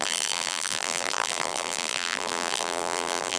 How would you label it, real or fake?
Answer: fake